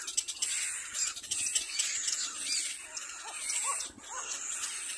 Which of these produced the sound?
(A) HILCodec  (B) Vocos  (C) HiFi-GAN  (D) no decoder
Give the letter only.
D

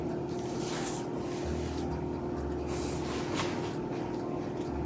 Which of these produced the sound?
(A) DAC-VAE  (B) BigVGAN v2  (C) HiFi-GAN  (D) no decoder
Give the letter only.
D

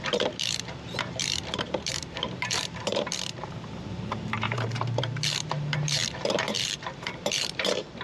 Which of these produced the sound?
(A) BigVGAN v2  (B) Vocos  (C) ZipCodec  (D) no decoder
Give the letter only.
A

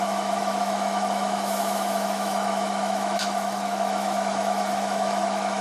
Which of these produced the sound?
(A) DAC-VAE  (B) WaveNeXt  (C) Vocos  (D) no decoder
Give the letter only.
A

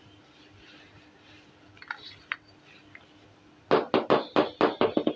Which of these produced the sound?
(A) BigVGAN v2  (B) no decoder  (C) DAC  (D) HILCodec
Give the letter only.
B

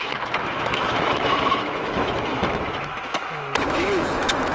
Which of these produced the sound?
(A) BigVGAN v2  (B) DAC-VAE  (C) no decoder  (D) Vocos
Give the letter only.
B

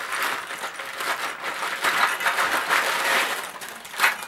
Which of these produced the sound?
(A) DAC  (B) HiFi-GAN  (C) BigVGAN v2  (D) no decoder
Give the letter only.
D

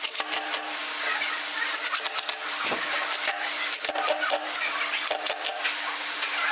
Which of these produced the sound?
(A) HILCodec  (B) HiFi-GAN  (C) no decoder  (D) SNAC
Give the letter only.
C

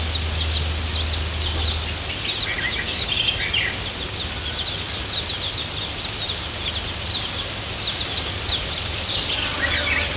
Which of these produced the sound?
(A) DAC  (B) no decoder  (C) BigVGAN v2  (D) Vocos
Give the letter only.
B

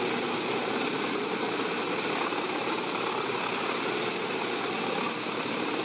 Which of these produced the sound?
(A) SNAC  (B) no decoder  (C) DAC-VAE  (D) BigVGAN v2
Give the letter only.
D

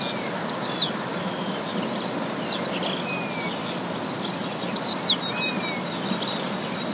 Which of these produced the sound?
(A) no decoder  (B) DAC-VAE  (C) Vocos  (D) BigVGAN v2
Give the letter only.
A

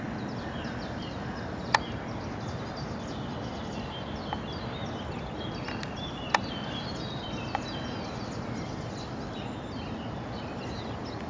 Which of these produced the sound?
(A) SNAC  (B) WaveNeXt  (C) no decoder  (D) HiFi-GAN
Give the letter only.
C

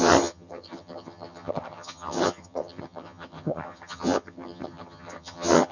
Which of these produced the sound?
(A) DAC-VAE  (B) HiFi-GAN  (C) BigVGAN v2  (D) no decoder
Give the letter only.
B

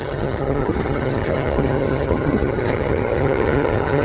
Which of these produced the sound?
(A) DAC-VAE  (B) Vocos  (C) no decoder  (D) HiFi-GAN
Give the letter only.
D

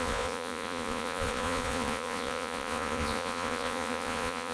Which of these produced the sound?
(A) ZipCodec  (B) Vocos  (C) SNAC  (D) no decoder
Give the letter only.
B